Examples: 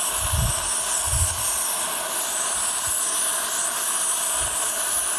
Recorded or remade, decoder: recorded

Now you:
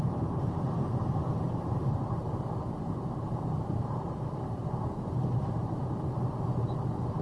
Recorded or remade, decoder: remade, vocoder, BigVGAN v2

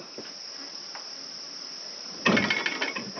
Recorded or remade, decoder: recorded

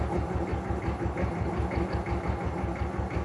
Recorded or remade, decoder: recorded